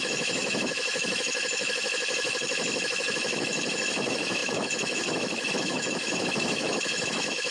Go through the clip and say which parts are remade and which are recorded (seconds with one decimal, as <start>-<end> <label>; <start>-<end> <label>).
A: 0.0-7.5 remade